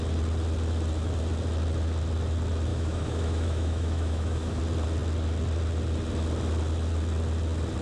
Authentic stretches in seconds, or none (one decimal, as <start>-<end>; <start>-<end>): 0.0-2.7; 4.6-7.8